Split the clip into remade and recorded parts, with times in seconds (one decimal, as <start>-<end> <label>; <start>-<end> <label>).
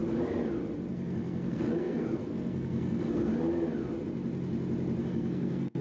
0.0-0.9 recorded; 0.9-3.3 remade; 3.3-5.0 recorded; 5.0-5.8 remade